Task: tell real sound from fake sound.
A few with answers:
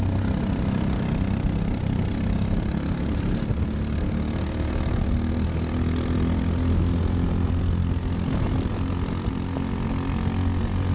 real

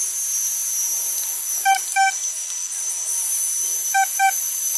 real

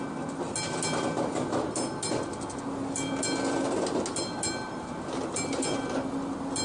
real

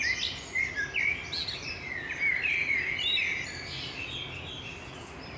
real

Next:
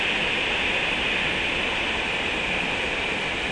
real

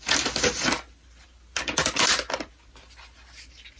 real